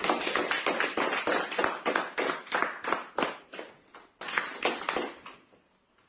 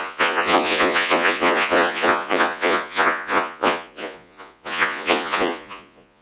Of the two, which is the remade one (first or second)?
second